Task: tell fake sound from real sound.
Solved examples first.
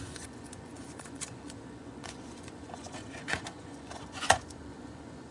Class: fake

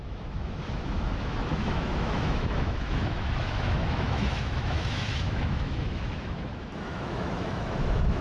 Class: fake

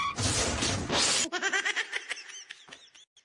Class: real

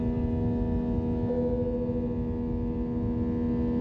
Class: real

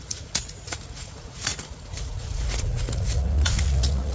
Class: fake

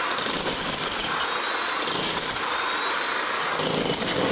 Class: real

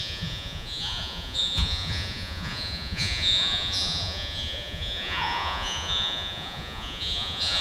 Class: fake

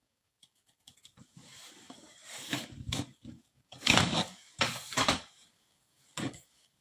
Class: fake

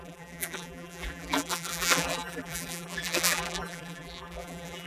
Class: fake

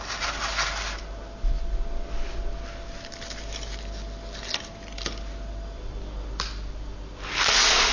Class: real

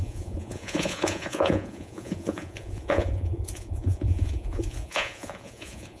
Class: fake